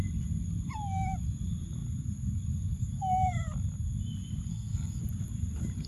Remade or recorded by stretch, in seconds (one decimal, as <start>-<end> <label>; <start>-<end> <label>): 0.0-4.5 recorded; 4.5-5.0 remade; 5.0-5.9 recorded